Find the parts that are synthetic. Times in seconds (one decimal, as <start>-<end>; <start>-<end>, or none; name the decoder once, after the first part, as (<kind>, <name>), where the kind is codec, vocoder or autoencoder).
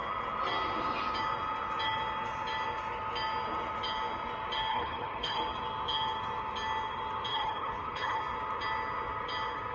4.7-5.4 (codec, HILCodec); 7.3-8.2